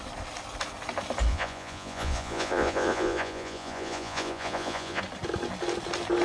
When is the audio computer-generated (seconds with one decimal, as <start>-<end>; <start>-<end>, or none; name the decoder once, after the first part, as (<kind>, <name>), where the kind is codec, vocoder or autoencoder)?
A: 1.3-5.0 (vocoder, Vocos)

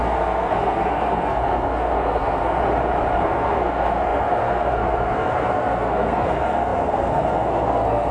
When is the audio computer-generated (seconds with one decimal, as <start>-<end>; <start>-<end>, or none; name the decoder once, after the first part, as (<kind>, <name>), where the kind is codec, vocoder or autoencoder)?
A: 0.0-2.6 (codec, SNAC); 3.2-8.1